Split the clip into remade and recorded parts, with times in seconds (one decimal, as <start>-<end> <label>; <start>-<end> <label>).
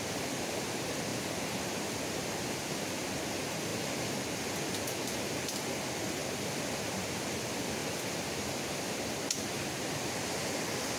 0.0-11.0 recorded